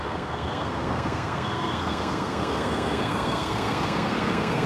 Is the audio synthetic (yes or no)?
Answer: yes